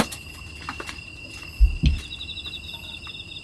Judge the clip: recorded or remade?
recorded